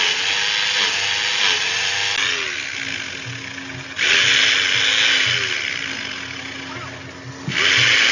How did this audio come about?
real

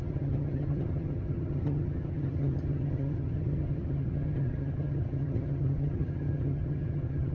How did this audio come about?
fake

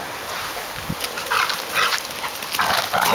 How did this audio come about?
real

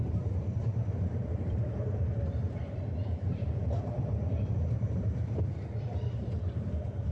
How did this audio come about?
fake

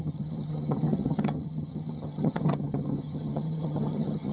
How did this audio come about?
fake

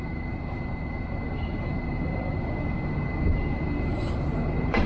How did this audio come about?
fake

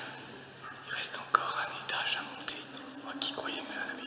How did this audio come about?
real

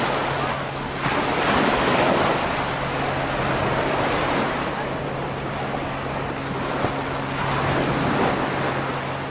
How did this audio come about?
real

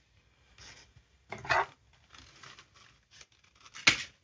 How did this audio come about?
real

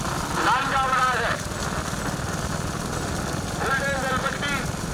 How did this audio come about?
real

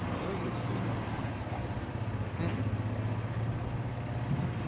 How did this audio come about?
real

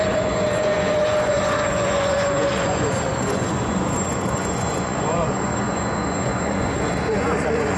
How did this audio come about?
fake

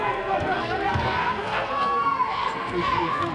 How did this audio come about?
fake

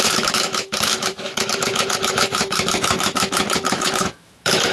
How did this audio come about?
fake